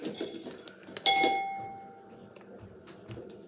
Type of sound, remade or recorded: recorded